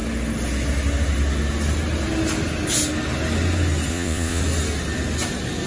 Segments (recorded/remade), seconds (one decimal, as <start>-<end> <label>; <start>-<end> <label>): 0.0-3.9 recorded; 3.9-4.4 remade; 4.4-5.7 recorded